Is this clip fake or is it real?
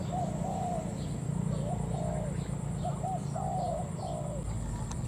real